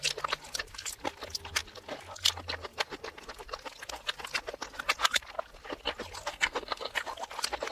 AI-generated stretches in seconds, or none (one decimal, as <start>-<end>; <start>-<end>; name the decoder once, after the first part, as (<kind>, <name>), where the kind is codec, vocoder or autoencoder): 6.3-6.9 (codec, SNAC)